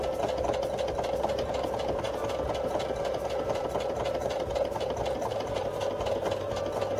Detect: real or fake real